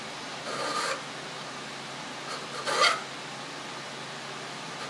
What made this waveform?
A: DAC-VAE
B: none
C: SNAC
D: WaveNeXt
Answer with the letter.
B